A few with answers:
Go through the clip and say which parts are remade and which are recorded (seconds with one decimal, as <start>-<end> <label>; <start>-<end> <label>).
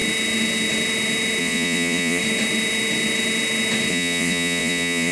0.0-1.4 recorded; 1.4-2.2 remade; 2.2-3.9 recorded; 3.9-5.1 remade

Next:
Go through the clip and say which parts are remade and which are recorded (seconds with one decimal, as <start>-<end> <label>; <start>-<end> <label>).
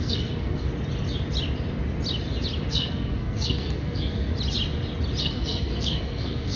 0.0-0.7 remade; 0.7-2.7 recorded; 2.7-4.3 remade; 4.3-5.2 recorded; 5.2-6.6 remade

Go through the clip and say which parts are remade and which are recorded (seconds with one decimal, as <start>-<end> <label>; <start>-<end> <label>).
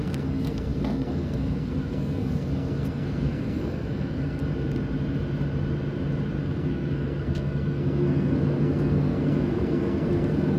0.0-4.4 remade; 4.4-6.4 recorded; 6.4-10.6 remade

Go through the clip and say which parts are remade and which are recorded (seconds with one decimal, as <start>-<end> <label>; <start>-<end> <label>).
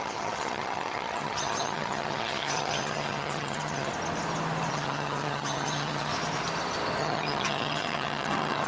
0.0-3.9 remade; 3.9-4.7 recorded; 4.7-6.1 remade; 6.1-7.0 recorded; 7.0-8.7 remade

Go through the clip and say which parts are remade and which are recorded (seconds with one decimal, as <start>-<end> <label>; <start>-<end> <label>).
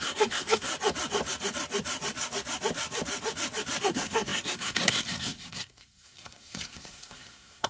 0.0-0.7 remade; 0.7-3.8 recorded; 3.8-7.7 remade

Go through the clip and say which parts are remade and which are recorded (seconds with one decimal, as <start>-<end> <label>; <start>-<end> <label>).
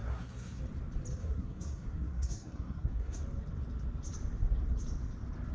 0.0-0.6 remade; 0.6-1.2 recorded; 1.2-3.2 remade; 3.2-5.5 recorded